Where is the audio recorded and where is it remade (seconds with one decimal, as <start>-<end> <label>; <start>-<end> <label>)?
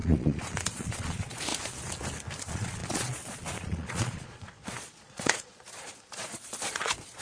0.0-1.5 remade; 1.5-2.4 recorded; 2.4-7.2 remade